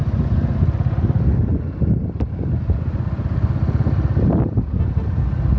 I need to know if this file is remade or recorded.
recorded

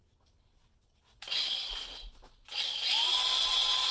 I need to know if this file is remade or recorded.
recorded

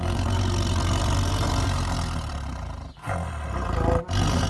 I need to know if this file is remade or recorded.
recorded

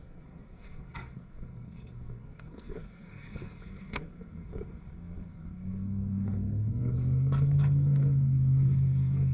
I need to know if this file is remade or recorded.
remade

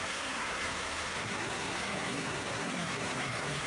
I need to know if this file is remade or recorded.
remade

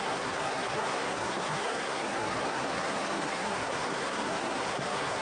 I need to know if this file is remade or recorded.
remade